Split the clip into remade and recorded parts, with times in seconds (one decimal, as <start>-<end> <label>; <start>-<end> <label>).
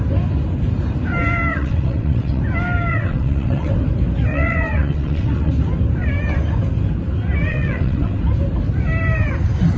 0.0-1.5 recorded; 1.5-2.4 remade; 2.4-2.9 recorded; 2.9-3.7 remade; 3.7-4.3 recorded; 4.3-5.5 remade; 5.5-7.5 recorded; 7.5-8.2 remade; 8.2-9.8 recorded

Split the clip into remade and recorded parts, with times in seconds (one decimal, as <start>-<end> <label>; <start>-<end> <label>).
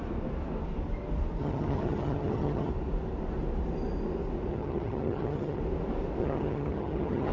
0.0-1.4 recorded; 1.4-2.7 remade; 2.7-4.5 recorded; 4.5-5.6 remade; 5.6-6.2 recorded; 6.2-7.3 remade